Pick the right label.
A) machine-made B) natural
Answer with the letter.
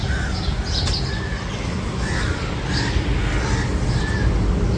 B